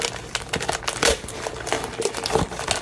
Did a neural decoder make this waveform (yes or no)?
no